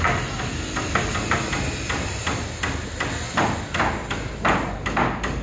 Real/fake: real